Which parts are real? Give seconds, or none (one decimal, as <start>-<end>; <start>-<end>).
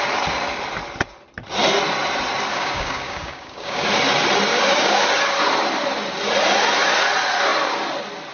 0.0-2.5; 3.9-4.5; 5.0-8.3